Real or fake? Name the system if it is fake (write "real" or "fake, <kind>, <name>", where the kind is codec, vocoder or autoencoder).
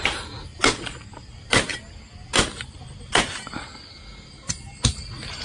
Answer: real